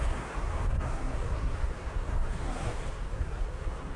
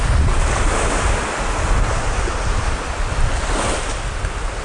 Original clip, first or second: second